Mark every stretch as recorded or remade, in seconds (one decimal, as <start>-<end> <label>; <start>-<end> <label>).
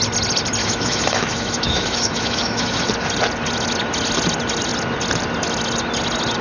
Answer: 0.0-0.6 recorded; 0.6-2.9 remade; 2.9-6.4 recorded